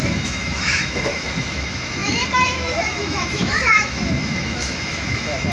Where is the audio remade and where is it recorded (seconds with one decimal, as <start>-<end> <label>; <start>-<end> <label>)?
0.0-5.5 remade